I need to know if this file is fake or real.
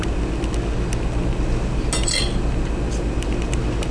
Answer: real